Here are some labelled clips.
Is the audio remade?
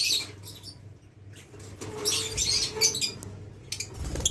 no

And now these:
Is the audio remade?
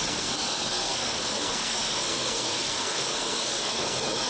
yes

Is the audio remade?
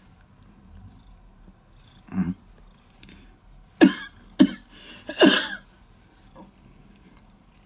no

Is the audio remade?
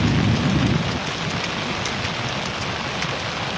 no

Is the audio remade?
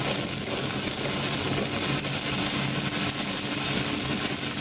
no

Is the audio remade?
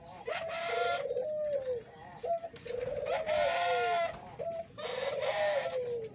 no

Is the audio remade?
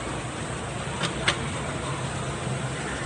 no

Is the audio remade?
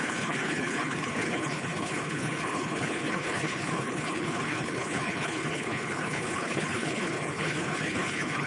yes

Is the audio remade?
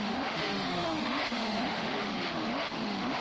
yes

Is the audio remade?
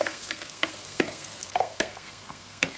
yes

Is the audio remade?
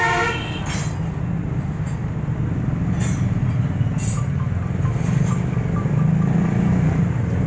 no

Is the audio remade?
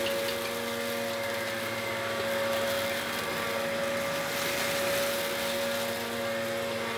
no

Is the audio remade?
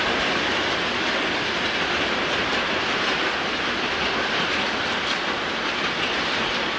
no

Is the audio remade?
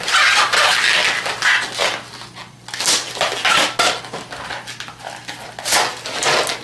no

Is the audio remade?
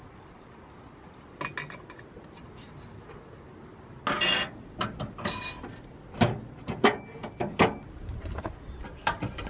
no